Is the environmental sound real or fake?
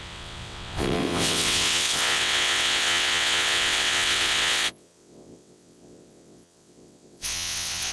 fake